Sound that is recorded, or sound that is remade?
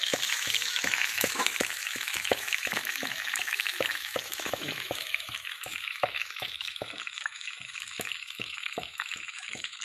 remade